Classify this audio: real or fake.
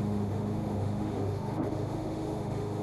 fake